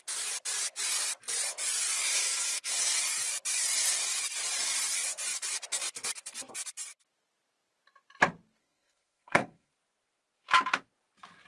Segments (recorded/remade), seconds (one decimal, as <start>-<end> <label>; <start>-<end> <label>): 0.0-2.1 recorded; 2.1-2.7 remade; 2.7-8.6 recorded; 8.6-9.7 remade; 9.7-11.5 recorded